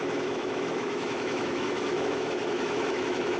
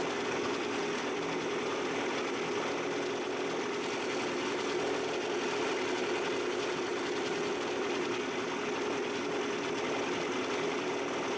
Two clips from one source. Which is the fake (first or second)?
first